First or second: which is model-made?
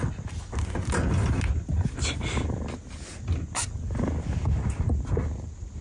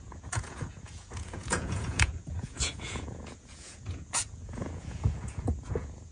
second